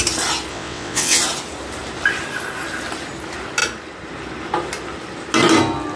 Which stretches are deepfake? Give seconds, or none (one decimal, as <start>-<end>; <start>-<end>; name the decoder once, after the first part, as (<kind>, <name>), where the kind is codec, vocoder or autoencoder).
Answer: 0.5-1.2 (vocoder, WaveNeXt)